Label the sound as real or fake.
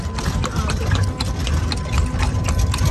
real